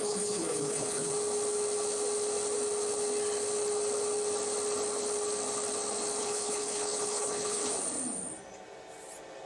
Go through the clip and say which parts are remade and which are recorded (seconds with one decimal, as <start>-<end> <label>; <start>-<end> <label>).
0.0-1.1 remade; 1.1-6.2 recorded; 6.2-7.6 remade; 7.6-9.5 recorded